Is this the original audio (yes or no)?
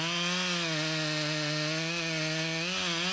yes